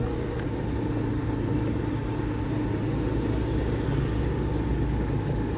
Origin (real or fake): real